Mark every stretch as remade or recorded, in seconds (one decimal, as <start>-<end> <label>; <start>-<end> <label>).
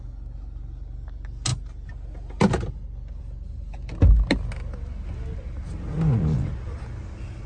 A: 0.0-7.5 recorded